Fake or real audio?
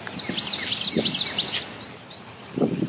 real